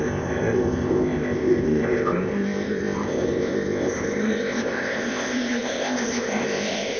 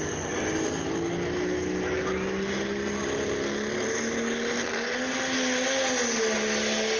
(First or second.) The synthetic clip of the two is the first